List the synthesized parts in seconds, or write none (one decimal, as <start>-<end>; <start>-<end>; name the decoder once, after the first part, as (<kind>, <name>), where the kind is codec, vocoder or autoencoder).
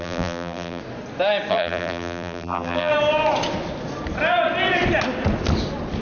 0.0-0.8 (vocoder, BigVGAN v2); 1.5-2.9